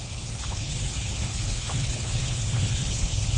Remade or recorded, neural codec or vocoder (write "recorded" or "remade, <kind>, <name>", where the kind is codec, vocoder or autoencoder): remade, codec, HILCodec